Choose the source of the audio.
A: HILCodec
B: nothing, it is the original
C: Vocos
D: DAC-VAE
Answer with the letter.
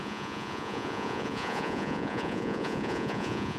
C